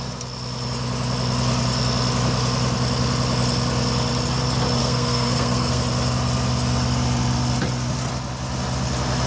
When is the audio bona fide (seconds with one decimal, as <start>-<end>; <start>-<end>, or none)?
0.0-4.8; 5.8-9.3